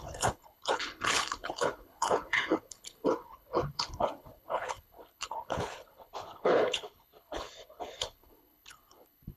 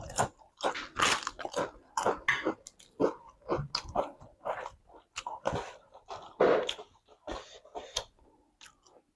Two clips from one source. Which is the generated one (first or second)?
first